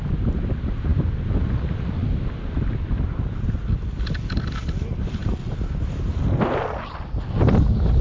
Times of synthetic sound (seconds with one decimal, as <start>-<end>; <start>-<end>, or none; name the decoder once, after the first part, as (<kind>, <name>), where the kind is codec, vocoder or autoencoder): none